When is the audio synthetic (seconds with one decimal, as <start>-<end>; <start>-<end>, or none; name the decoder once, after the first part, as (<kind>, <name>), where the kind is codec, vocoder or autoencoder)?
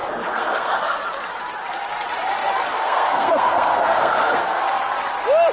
0.0-1.0 (codec, SNAC); 2.7-4.6